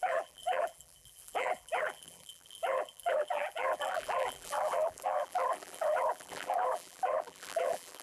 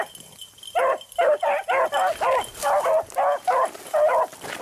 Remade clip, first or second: first